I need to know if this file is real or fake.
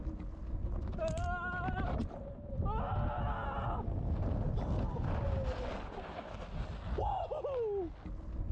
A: real